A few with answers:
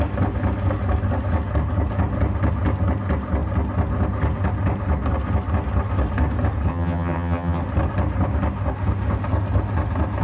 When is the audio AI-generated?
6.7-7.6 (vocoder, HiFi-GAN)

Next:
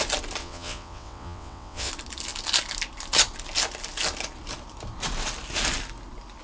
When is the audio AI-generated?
0.4-1.9 (vocoder, WaveNeXt)

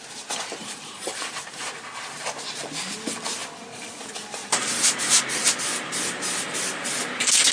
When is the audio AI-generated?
0.6-1.7 (vocoder, BigVGAN v2); 4.4-5.2

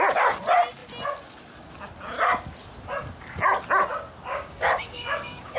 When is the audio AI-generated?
4.3-5.6 (codec, DAC)

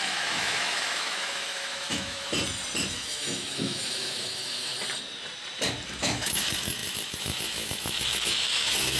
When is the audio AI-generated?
0.0-2.3 (autoencoder, DAC-VAE); 2.9-4.7; 6.0-9.0